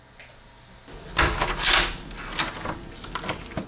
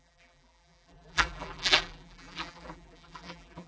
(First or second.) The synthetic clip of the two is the second